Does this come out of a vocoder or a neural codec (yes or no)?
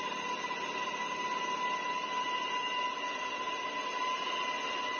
no